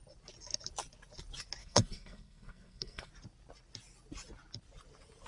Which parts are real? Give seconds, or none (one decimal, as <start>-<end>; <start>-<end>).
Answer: 0.0-1.6; 3.1-5.3